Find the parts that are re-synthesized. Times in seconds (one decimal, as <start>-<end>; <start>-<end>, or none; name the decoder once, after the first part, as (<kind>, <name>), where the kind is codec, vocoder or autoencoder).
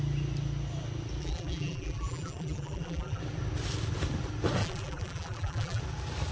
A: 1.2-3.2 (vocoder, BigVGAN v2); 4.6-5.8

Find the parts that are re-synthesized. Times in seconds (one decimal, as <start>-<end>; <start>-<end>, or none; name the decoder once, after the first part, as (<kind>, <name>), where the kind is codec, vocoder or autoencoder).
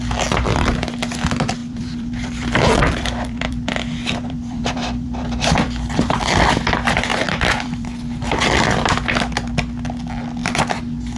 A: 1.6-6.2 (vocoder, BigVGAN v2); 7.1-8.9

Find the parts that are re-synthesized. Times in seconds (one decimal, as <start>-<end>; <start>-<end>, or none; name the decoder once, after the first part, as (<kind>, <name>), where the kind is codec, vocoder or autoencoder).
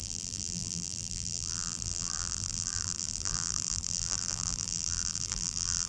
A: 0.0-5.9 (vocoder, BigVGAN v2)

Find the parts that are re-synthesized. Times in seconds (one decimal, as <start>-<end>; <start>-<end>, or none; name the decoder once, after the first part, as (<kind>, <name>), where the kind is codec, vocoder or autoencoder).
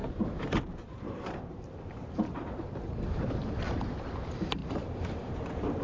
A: 0.0-3.5 (vocoder, BigVGAN v2); 4.6-5.8